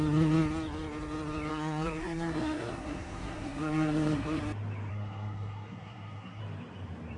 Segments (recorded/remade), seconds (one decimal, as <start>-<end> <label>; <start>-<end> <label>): 0.0-1.5 recorded; 1.5-4.4 remade; 4.4-4.9 recorded; 4.9-6.4 remade; 6.4-7.2 recorded